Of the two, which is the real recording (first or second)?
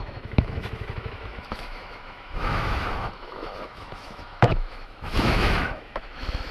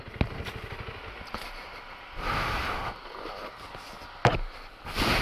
second